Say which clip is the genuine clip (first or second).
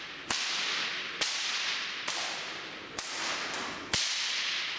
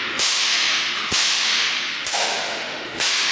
first